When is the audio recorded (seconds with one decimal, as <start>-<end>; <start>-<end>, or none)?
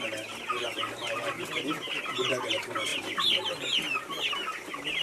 0.0-5.0